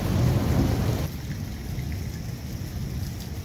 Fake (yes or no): no